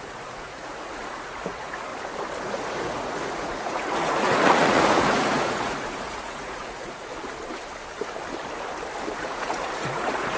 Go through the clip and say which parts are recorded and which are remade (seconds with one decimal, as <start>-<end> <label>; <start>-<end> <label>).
0.0-1.9 remade; 1.9-2.4 recorded; 2.4-7.1 remade; 7.1-9.2 recorded; 9.2-10.4 remade